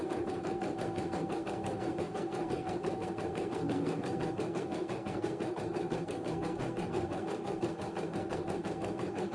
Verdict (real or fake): fake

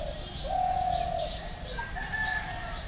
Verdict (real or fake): real